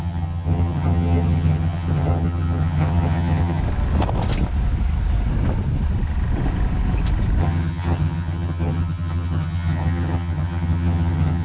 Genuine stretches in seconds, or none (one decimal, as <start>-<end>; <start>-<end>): 3.6-7.4